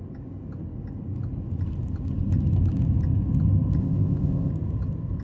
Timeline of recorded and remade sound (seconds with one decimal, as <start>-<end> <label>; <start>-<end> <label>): 0.0-3.8 recorded; 3.8-4.5 remade; 4.5-5.2 recorded